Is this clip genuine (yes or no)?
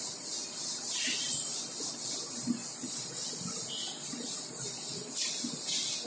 yes